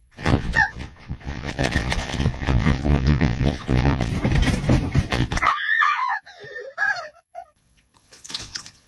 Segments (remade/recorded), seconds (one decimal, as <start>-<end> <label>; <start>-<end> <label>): 0.0-4.1 remade; 4.1-5.1 recorded; 5.1-6.4 remade; 6.4-7.0 recorded; 7.0-8.9 remade

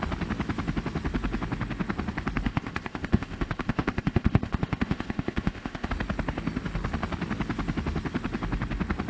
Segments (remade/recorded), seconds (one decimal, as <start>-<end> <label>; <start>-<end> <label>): 0.0-2.5 recorded; 2.5-5.9 remade; 5.9-9.1 recorded

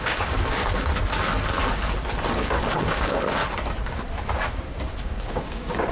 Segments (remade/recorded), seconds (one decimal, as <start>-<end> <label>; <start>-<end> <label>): 0.0-0.9 remade; 0.9-2.3 recorded; 2.3-3.4 remade; 3.4-5.0 recorded; 5.0-5.9 remade

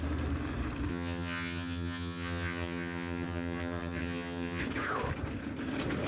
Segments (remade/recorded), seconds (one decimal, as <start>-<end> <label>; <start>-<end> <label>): 0.0-0.9 recorded; 0.9-4.6 remade; 4.6-6.1 recorded

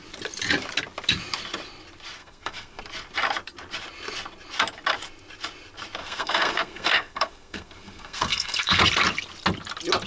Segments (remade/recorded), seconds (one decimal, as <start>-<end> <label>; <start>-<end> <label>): 0.0-2.2 recorded; 2.2-2.8 remade; 2.8-6.0 recorded; 6.0-8.8 remade; 8.8-10.1 recorded

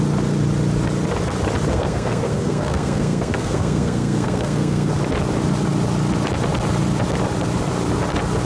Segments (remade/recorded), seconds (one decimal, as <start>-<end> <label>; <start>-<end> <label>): 0.0-1.7 recorded; 1.7-4.9 remade; 4.9-8.5 recorded

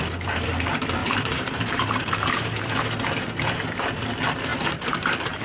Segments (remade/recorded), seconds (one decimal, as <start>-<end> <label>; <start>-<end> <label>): 0.0-1.0 recorded; 1.0-2.6 remade; 2.6-4.5 recorded; 4.5-5.4 remade